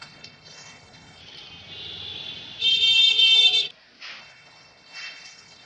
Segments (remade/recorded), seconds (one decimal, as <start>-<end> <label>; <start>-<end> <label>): 0.0-1.2 remade; 1.2-4.2 recorded; 4.2-5.7 remade

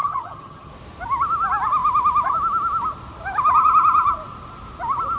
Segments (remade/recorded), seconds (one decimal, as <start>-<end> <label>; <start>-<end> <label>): 0.0-0.7 remade; 0.7-5.2 recorded

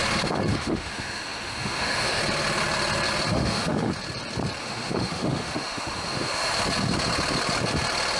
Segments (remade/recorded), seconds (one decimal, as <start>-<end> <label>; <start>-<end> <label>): 0.0-0.5 recorded; 0.5-2.2 remade; 2.2-3.3 recorded; 3.3-3.9 remade; 3.9-4.6 recorded; 4.6-6.5 remade; 6.5-8.2 recorded

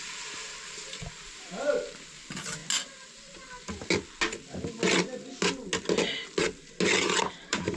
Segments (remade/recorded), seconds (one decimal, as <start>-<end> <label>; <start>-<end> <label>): 0.0-2.6 remade; 2.6-7.3 recorded; 7.3-7.8 remade

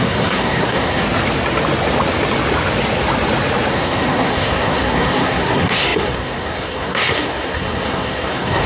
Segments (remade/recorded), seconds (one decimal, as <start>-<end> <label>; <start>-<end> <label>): 0.0-1.0 remade; 1.0-3.7 recorded; 3.7-8.7 remade

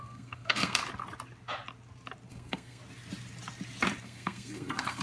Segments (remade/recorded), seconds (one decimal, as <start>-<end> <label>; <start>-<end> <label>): 0.0-0.8 remade; 0.8-2.3 recorded; 2.3-2.8 remade; 2.8-4.0 recorded; 4.0-5.0 remade